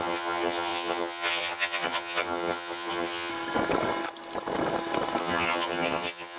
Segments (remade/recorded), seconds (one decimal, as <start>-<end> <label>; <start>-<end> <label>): 0.0-3.3 remade; 3.3-5.2 recorded; 5.2-6.4 remade